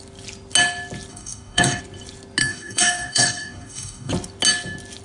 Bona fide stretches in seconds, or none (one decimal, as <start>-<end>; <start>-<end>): 0.0-1.1; 1.8-2.4; 4.1-5.0